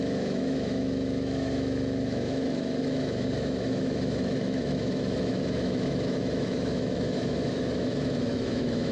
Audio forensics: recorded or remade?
remade